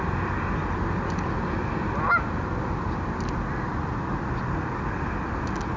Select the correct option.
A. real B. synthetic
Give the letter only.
A